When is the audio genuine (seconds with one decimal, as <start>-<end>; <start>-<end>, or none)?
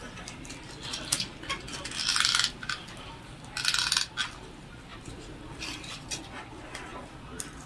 0.0-7.7